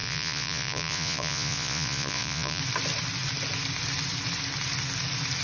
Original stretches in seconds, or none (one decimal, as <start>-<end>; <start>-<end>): 2.6-5.4